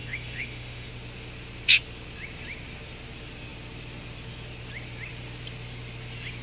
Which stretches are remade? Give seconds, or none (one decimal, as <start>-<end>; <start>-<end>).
0.0-0.9